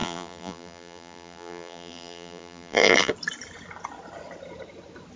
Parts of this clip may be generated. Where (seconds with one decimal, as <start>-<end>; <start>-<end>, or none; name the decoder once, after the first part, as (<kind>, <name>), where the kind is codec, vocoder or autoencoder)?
0.0-3.1 (vocoder, BigVGAN v2)